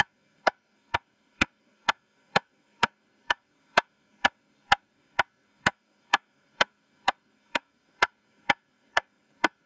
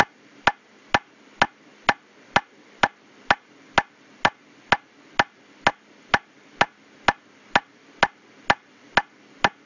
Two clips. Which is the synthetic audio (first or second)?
first